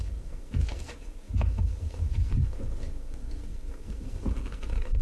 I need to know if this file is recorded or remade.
remade